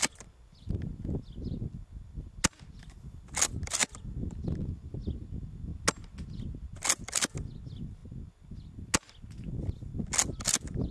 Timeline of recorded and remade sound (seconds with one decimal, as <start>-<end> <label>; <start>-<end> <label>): 0.0-3.8 recorded; 3.8-4.9 remade; 4.9-10.9 recorded